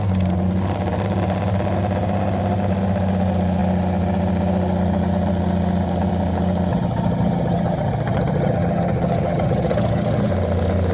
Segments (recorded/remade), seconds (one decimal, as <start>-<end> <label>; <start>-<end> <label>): 0.0-6.7 recorded; 6.7-10.3 remade; 10.3-10.9 recorded

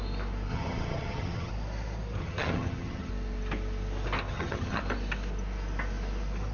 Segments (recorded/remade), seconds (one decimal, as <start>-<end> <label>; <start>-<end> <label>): 0.0-0.5 recorded; 0.5-1.5 remade; 1.5-2.2 recorded; 2.2-3.1 remade; 3.1-4.3 recorded; 4.3-4.8 remade; 4.8-6.5 recorded

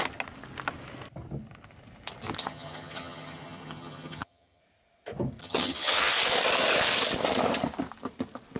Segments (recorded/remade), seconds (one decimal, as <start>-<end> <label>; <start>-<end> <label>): 0.0-2.4 recorded; 2.4-4.6 remade; 4.6-5.4 recorded; 5.4-6.1 remade; 6.1-8.6 recorded